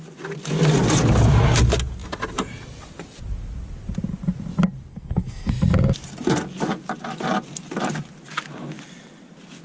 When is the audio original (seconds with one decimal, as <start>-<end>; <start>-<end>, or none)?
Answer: 0.0-4.9; 5.5-9.6